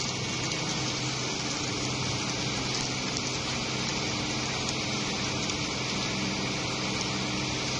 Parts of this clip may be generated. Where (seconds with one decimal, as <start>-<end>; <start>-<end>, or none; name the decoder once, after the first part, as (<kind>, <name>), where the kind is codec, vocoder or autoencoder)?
none